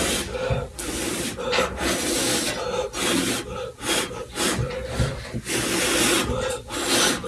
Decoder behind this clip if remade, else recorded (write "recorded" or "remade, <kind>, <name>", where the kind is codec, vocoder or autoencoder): recorded